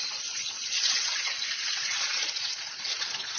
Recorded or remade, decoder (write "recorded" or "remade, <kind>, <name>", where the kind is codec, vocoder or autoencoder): remade, vocoder, Vocos